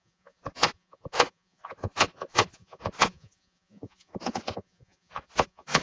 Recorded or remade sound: remade